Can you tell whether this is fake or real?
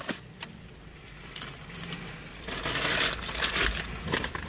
real